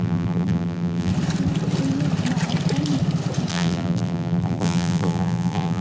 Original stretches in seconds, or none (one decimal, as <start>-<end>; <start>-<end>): 1.1-3.5